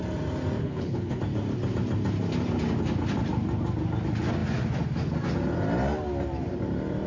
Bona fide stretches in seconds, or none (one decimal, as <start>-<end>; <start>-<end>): 0.0-0.6; 1.2-7.1